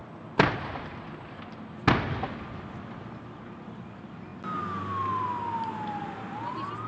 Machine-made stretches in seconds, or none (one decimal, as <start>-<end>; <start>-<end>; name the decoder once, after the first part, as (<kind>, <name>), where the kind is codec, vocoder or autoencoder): none